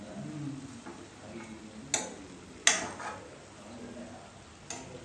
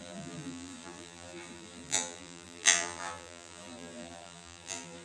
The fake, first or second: second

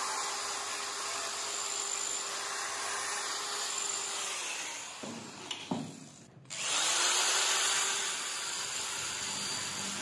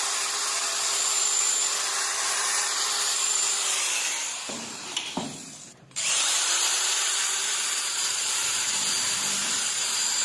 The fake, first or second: second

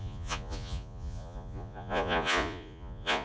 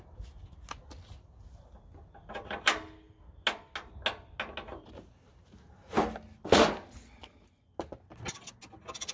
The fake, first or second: first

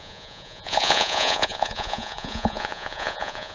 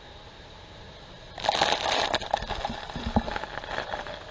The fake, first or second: first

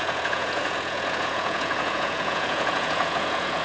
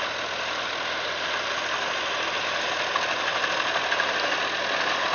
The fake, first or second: first